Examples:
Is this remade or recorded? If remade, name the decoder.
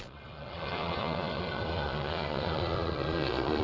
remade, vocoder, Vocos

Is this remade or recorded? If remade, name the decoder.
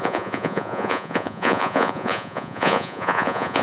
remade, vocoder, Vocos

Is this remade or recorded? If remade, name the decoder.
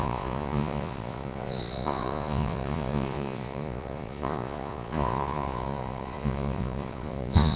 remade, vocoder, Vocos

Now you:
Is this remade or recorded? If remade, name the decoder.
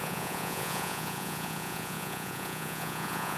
remade, vocoder, Vocos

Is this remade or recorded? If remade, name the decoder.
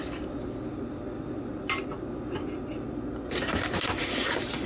recorded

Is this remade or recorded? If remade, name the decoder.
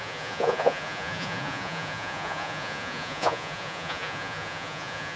remade, vocoder, Vocos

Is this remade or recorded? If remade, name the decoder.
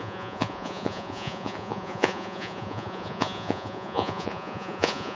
remade, vocoder, Vocos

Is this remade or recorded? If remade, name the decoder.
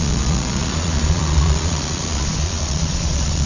remade, vocoder, Vocos